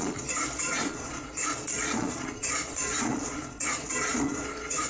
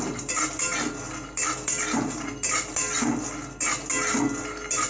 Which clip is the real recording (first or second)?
second